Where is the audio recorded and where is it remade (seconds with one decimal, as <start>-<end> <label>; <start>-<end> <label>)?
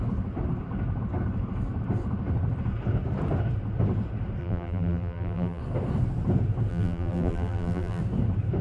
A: 0.0-4.4 recorded; 4.4-5.6 remade; 5.6-6.7 recorded; 6.7-8.0 remade; 8.0-8.6 recorded